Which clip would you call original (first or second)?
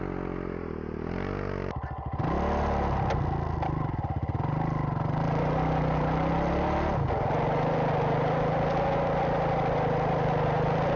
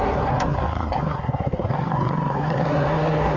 first